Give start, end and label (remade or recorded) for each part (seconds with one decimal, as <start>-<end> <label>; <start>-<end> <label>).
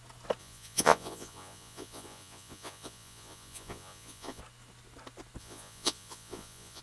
0.0-0.4 recorded; 0.4-4.4 remade; 4.4-5.4 recorded; 5.4-6.8 remade